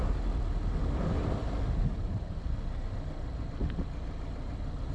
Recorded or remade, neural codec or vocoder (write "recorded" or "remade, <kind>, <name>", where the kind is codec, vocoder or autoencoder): recorded